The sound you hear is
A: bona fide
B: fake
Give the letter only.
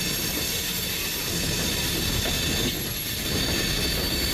A